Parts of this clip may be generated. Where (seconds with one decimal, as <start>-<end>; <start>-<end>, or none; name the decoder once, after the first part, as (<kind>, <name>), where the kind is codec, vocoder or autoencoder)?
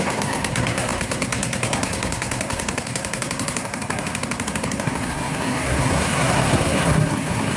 0.0-7.6 (codec, SNAC)